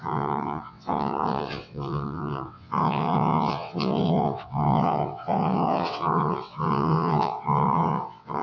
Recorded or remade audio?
remade